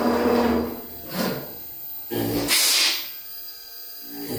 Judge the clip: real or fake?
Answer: real